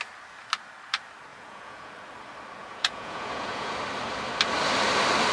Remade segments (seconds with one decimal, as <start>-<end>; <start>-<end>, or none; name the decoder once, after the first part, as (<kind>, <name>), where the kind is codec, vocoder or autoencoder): 1.3-1.9 (vocoder, Vocos); 2.6-3.8